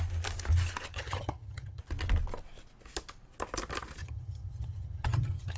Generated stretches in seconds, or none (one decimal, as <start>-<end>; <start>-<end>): 0.9-1.8; 4.0-5.6